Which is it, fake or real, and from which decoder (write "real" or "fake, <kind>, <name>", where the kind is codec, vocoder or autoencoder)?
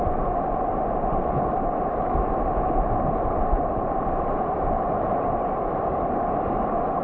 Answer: real